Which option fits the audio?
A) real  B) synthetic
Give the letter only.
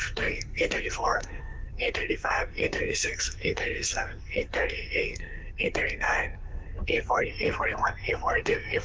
B